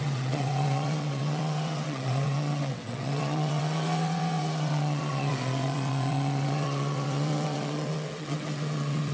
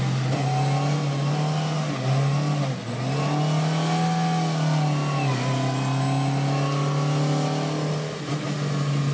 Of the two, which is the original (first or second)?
second